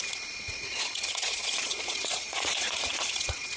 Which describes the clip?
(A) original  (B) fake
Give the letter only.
B